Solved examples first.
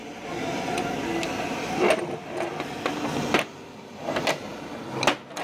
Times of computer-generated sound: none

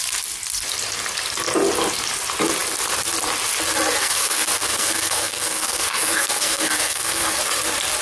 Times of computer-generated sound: 4.0-7.4 (codec, SNAC)

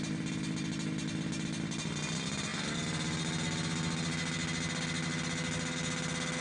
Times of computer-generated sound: none

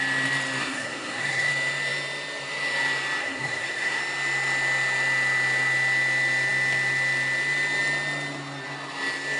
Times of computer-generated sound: 0.6-1.5 (codec, SNAC); 3.2-4.0

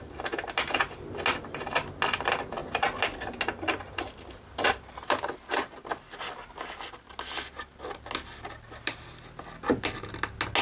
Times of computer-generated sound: none

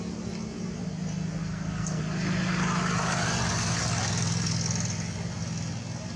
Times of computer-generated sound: 1.4-2.0 (codec, SNAC)

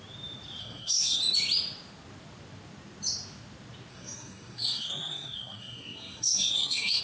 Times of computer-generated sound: 0.6-1.2 (codec, SNAC); 3.9-7.0